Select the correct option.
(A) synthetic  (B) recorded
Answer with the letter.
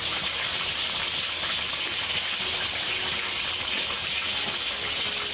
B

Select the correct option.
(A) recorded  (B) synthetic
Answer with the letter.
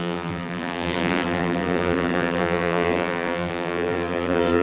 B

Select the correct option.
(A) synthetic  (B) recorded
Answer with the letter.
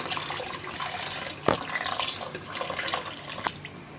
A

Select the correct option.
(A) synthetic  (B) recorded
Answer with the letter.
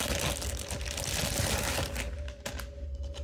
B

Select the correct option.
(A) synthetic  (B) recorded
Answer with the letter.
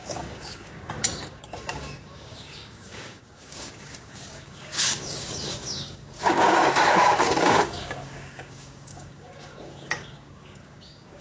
A